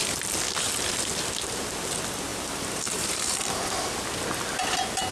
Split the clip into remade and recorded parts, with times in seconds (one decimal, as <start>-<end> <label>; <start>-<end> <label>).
0.0-2.3 recorded; 2.3-3.7 remade; 3.7-5.1 recorded